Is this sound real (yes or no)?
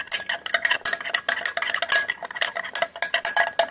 yes